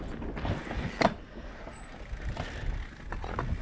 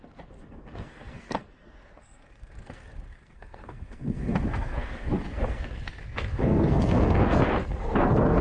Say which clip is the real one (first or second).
first